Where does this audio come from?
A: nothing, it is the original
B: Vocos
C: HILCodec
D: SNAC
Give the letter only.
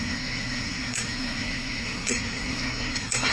D